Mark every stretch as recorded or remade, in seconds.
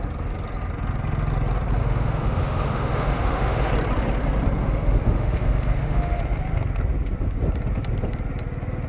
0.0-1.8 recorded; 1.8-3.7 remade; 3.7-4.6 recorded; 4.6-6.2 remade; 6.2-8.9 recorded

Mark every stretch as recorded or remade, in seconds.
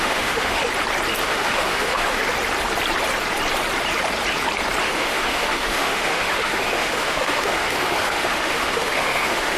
0.0-0.6 remade; 0.6-1.2 recorded; 1.2-2.2 remade; 2.2-4.8 recorded; 4.8-9.6 remade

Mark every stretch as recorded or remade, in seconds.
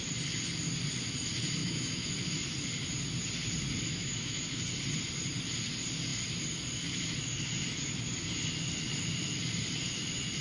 0.0-1.6 recorded; 1.6-2.1 remade; 2.1-3.9 recorded; 3.9-4.4 remade; 4.4-10.4 recorded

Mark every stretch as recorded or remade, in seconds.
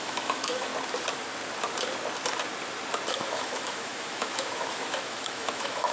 0.0-0.7 remade; 0.7-3.1 recorded; 3.1-5.9 remade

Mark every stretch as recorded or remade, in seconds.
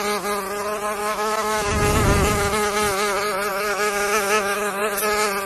0.0-1.0 recorded; 1.0-1.7 remade; 1.7-3.5 recorded; 3.5-4.8 remade; 4.8-5.5 recorded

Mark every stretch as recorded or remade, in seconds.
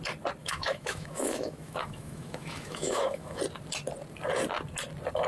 0.0-0.4 recorded; 0.4-3.4 remade; 3.4-5.3 recorded